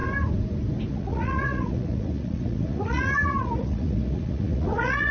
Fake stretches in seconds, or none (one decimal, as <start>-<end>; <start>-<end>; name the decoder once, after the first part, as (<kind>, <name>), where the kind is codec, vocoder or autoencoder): 0.9-5.1 (vocoder, Vocos)